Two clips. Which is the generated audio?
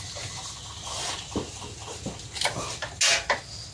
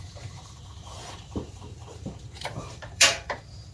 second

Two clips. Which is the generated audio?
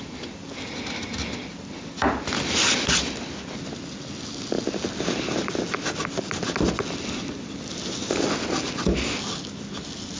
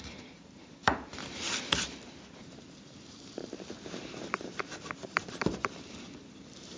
second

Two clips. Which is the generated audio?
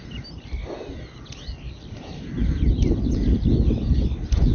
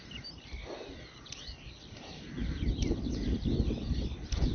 second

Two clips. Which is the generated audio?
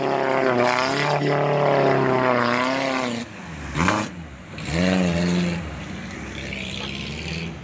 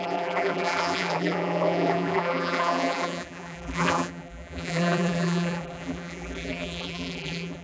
second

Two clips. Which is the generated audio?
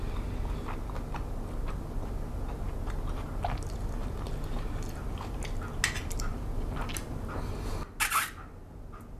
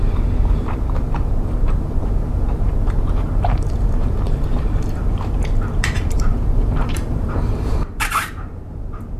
second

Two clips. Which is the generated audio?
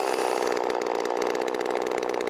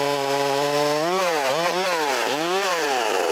second